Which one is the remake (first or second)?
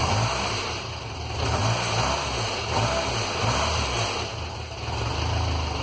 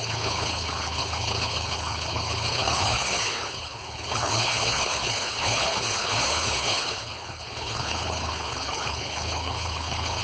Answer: second